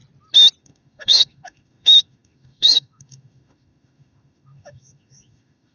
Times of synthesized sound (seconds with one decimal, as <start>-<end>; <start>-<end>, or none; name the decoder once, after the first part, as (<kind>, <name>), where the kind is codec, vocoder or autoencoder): 0.6-5.7 (autoencoder, DAC-VAE)

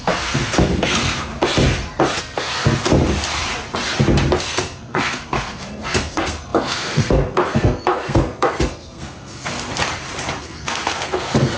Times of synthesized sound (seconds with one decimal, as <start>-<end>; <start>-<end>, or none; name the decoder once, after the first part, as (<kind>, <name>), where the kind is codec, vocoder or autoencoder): 0.0-1.3 (codec, SNAC); 2.2-2.9; 4.4-9.7; 10.4-11.6

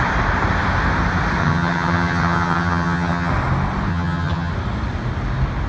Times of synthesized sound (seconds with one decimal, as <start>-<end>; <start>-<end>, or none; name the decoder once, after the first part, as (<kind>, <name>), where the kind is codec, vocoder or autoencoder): 1.4-3.3 (vocoder, HiFi-GAN); 3.9-4.5

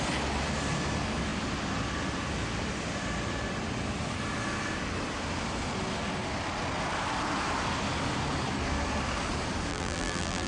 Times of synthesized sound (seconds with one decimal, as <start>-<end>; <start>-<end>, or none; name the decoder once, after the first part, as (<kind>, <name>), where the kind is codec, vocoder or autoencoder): 9.7-10.5 (vocoder, BigVGAN v2)

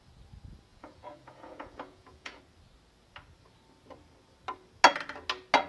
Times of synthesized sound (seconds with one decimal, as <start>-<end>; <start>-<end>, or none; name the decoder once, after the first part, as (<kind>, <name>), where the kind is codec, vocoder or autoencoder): 0.7-2.4 (vocoder, Vocos)

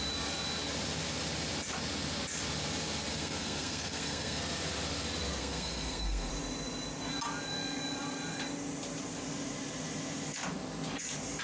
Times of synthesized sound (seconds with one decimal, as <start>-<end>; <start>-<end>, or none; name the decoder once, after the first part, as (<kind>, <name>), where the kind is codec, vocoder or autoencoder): 3.1-4.4 (codec, SNAC); 5.4-6.3

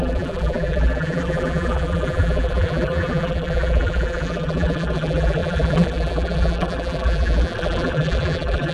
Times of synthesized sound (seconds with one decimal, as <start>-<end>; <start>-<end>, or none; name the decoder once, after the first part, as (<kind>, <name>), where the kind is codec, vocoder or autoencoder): 0.0-8.7 (vocoder, BigVGAN v2)

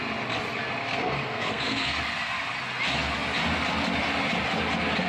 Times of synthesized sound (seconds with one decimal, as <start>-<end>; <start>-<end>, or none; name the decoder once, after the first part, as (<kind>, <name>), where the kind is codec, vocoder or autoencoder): 0.8-2.0 (codec, SNAC)